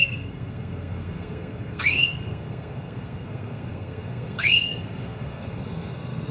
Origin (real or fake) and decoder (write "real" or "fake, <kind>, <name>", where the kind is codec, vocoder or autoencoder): fake, codec, SNAC